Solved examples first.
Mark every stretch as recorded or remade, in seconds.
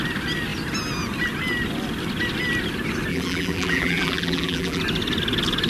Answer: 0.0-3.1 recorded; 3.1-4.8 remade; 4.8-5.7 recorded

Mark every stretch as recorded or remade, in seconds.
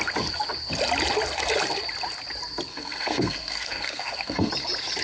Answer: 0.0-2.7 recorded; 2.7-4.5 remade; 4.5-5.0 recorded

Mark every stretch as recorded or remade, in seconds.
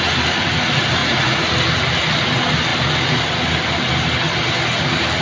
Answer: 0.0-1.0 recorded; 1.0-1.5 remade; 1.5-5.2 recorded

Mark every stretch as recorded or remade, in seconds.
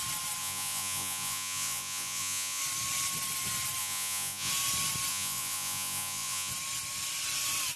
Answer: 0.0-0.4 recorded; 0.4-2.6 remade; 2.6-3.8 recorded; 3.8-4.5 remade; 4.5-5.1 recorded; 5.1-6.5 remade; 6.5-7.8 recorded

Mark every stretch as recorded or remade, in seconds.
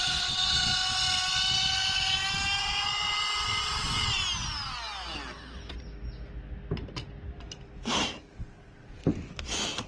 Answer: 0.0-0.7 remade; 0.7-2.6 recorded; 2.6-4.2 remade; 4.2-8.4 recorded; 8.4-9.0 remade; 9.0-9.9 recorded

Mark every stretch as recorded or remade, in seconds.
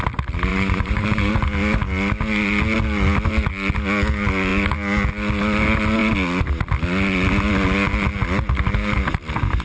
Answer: 0.0-0.5 recorded; 0.5-1.3 remade; 1.3-9.6 recorded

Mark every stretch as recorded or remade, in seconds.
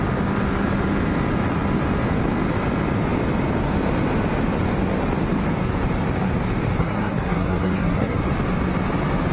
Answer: 0.0-6.8 recorded; 6.8-8.2 remade; 8.2-9.3 recorded